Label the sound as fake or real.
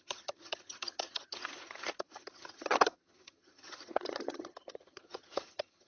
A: fake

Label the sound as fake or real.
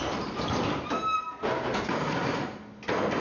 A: real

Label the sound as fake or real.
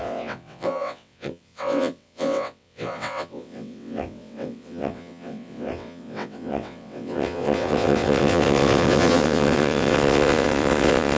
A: fake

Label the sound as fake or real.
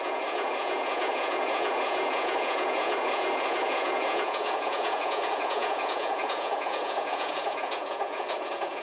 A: fake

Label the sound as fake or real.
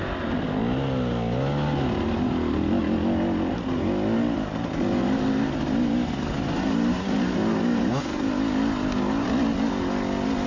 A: real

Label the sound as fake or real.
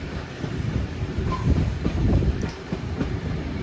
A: fake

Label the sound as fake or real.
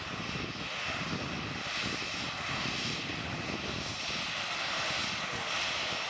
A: real